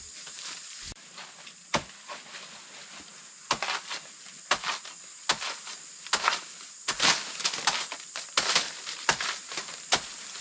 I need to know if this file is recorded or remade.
recorded